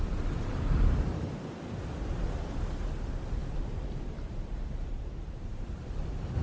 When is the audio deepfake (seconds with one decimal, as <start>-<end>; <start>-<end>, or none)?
4.9-6.0